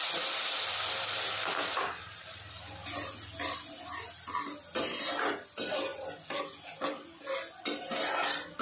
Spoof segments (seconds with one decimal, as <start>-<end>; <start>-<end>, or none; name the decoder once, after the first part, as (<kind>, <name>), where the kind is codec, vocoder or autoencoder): none